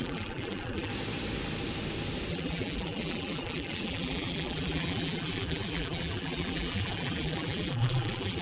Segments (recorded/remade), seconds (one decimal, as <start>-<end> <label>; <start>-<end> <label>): 0.0-0.9 remade; 0.9-2.3 recorded; 2.3-8.4 remade